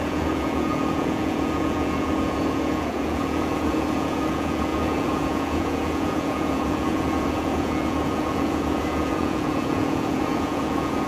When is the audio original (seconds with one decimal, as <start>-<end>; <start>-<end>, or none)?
none